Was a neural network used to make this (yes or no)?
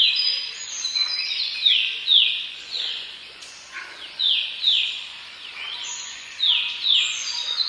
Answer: yes